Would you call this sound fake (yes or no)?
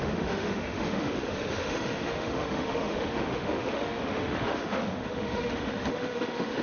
yes